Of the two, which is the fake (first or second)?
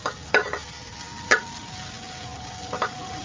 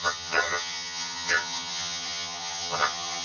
second